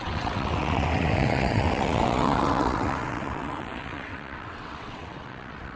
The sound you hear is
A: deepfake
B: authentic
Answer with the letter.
A